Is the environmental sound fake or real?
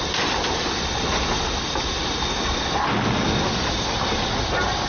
real